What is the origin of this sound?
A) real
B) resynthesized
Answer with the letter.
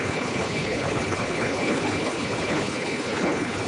B